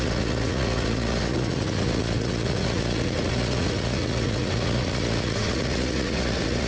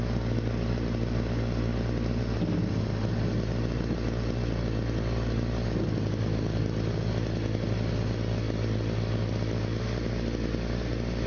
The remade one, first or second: first